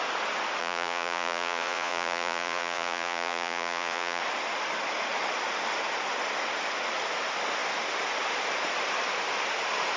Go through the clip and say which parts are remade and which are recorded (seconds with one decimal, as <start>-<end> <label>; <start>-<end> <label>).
0.0-0.6 recorded; 0.6-4.2 remade; 4.2-10.0 recorded